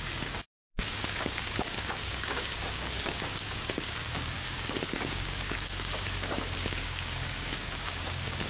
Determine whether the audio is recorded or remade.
remade